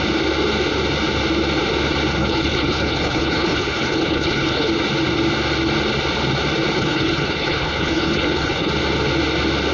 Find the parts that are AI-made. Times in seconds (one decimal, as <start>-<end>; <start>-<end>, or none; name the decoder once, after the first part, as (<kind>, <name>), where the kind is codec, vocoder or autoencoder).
2.2-4.7 (codec, HILCodec); 6.7-8.7